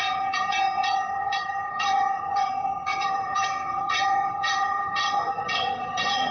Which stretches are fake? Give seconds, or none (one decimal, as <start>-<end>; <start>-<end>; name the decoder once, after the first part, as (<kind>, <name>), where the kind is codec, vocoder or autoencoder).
0.0-6.3 (vocoder, HiFi-GAN)